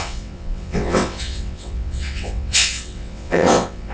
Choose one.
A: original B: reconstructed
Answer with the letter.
B